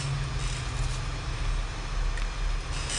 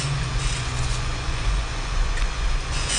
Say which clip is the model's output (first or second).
second